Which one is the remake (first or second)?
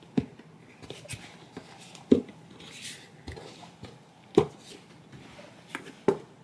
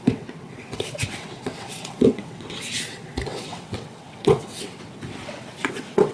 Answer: second